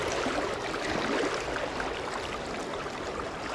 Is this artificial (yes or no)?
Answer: no